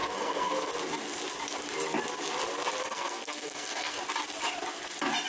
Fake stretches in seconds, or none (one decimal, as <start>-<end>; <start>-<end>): 0.0-0.7; 2.8-4.0